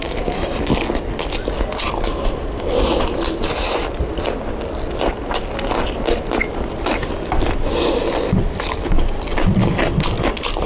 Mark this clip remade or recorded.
recorded